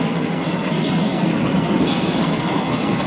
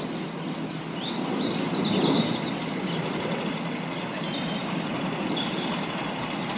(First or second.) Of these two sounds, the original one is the second